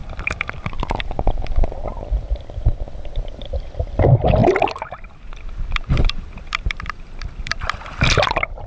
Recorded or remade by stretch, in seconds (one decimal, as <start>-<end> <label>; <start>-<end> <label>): 0.0-8.7 remade